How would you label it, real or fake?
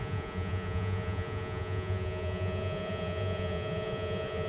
fake